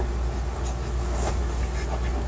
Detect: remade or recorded recorded